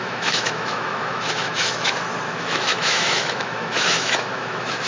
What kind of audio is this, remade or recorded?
remade